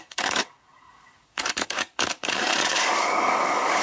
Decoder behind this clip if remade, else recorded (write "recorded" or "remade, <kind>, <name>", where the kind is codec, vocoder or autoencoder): remade, codec, DAC